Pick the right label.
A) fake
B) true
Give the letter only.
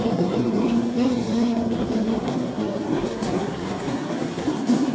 A